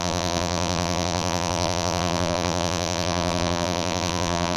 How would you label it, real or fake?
fake